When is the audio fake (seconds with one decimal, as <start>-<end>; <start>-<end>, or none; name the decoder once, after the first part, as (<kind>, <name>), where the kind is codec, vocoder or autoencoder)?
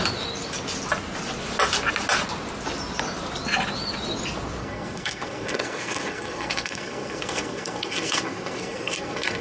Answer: 4.6-9.4 (codec, SNAC)